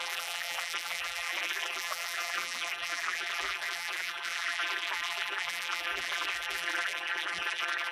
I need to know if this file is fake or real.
fake